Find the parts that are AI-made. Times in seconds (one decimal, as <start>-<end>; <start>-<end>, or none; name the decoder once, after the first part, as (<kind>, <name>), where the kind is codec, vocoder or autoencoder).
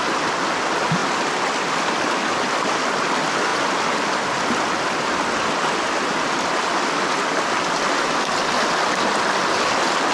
none